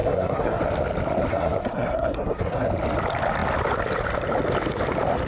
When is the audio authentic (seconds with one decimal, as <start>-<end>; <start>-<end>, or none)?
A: 0.6-1.3; 2.7-5.3